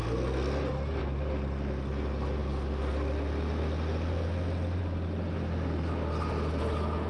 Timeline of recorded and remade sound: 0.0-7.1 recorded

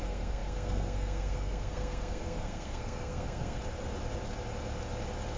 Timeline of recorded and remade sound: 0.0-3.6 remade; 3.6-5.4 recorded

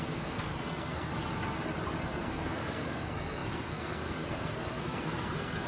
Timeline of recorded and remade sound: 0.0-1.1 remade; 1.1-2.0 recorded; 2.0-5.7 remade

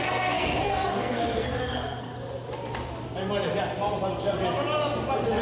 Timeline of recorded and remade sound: 0.0-2.1 remade; 2.1-5.4 recorded

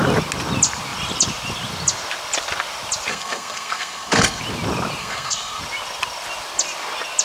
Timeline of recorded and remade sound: 0.0-3.1 recorded; 3.1-4.4 remade; 4.4-5.0 recorded; 5.0-5.6 remade; 5.6-7.2 recorded